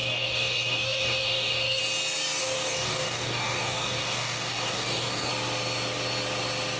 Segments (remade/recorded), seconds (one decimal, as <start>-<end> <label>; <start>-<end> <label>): 0.0-1.8 remade; 1.8-2.4 recorded; 2.4-5.3 remade; 5.3-6.8 recorded